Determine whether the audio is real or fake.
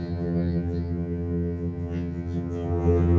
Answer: fake